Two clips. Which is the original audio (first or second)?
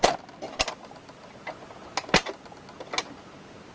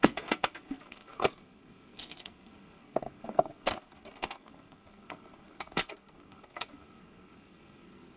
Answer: first